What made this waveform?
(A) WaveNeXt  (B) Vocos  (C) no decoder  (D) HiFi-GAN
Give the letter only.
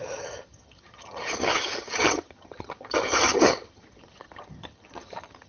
D